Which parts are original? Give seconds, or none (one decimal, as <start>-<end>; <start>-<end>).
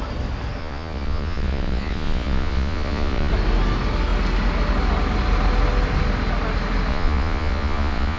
0.0-0.6; 3.3-6.9